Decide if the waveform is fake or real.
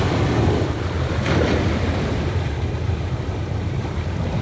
fake